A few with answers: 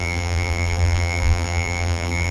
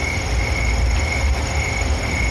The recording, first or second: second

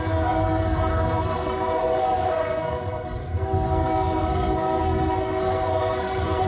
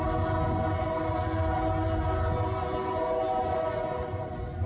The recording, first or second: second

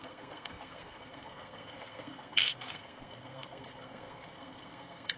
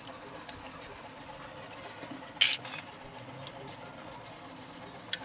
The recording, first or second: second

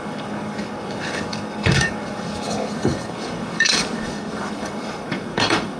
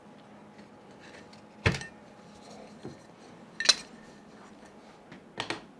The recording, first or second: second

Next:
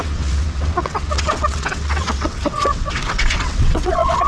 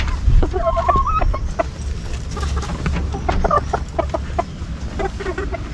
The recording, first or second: second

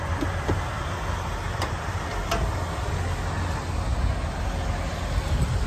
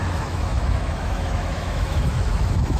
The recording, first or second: first